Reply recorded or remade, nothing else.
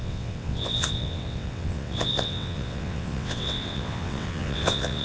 remade